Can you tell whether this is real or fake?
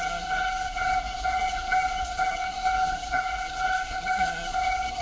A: fake